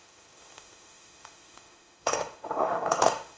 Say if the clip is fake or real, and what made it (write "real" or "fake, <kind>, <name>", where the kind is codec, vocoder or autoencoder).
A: fake, autoencoder, DAC-VAE